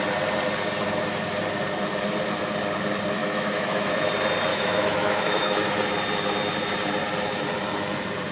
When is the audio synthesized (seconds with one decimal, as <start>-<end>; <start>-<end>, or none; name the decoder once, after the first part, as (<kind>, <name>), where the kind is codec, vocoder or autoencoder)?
3.2-4.1 (autoencoder, DAC-VAE); 4.5-5.8